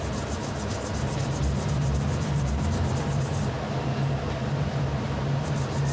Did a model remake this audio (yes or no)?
no